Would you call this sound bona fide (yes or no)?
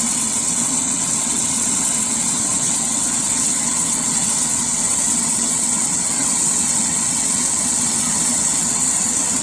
no